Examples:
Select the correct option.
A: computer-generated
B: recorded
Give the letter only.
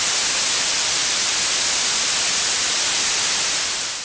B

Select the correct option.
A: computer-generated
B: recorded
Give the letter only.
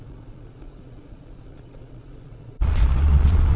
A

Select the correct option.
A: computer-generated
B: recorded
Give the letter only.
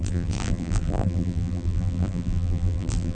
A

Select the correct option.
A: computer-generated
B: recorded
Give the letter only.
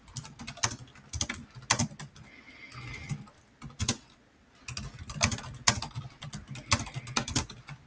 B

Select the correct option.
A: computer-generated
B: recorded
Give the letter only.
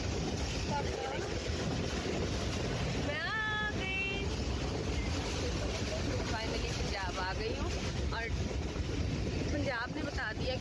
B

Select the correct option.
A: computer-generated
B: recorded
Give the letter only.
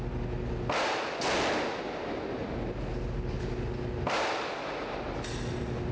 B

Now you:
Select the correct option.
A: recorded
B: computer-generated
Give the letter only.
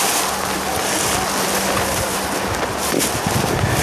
A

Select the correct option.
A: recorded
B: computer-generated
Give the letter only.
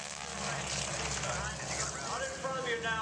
A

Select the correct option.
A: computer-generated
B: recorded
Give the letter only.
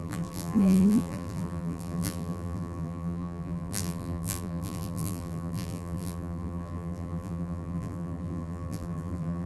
A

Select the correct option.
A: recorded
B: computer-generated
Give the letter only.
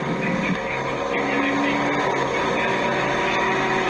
A